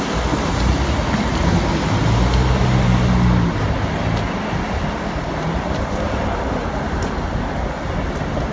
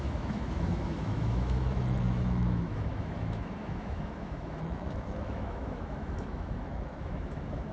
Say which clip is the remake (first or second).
second